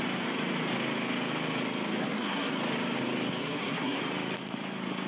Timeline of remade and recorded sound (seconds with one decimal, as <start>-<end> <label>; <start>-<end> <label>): 0.0-2.0 recorded; 2.0-2.5 remade; 2.5-3.4 recorded; 3.4-4.0 remade; 4.0-5.1 recorded